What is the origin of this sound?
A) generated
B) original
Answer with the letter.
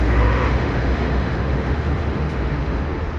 A